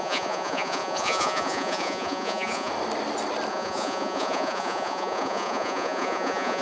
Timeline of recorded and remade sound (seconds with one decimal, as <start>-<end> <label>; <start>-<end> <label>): 0.0-2.7 remade; 2.7-3.5 recorded; 3.5-6.6 remade